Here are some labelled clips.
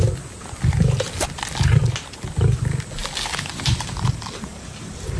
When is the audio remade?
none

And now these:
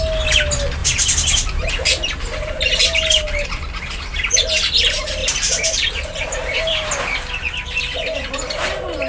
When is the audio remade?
0.8-2.5 (vocoder, BigVGAN v2); 5.2-6.9

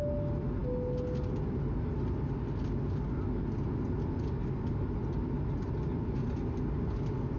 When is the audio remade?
none

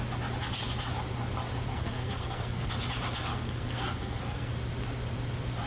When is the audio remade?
1.7-2.7 (codec, SNAC); 3.3-4.5

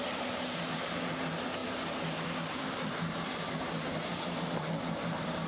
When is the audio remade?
0.0-5.5 (vocoder, BigVGAN v2)

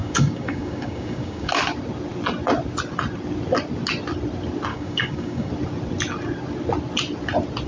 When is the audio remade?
0.0-1.5 (codec, DAC); 4.7-5.5